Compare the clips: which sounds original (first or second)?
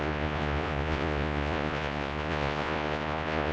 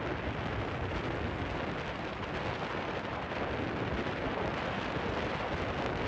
second